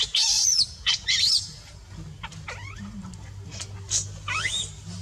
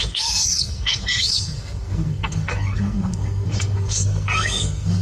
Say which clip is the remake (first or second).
second